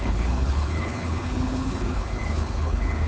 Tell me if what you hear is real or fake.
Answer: fake